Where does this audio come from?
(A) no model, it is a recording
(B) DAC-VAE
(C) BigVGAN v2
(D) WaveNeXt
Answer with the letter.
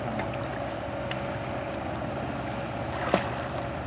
A